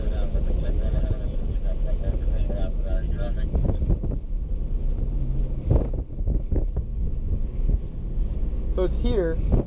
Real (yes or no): yes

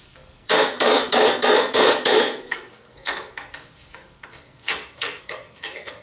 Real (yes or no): no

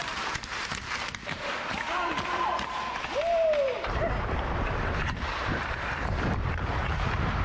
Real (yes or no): no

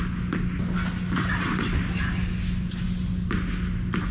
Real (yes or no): yes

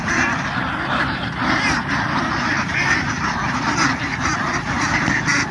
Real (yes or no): no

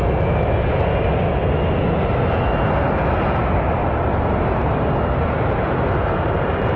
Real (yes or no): yes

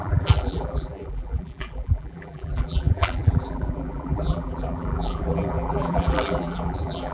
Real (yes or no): no